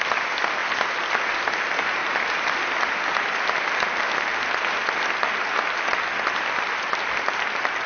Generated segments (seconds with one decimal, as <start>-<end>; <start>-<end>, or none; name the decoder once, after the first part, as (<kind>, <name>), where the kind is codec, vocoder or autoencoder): none